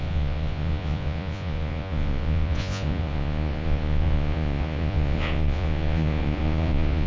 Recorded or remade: remade